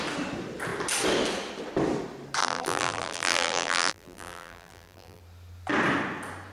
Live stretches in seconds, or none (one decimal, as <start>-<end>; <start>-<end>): 0.0-2.4; 5.2-6.5